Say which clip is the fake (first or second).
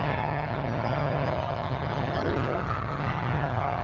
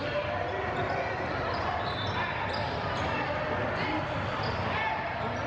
first